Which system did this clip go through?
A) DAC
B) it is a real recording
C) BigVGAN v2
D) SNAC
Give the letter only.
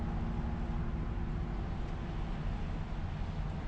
B